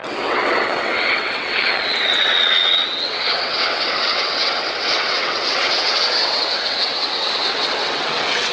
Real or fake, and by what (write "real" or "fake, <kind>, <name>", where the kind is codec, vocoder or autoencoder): fake, vocoder, WaveNeXt